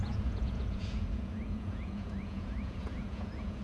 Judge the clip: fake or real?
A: fake